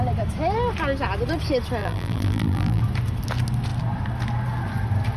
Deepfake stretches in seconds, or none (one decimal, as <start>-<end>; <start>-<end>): 1.8-2.8